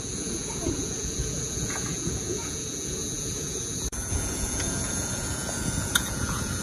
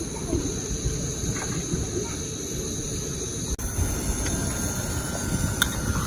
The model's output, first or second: first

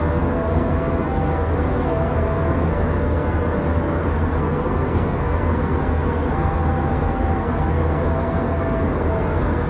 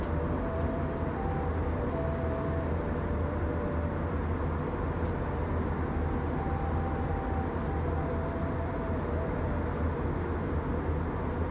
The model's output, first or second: first